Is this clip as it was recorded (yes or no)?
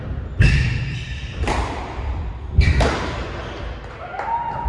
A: yes